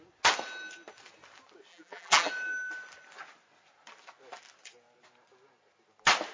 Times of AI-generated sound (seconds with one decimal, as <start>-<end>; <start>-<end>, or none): 1.7-2.3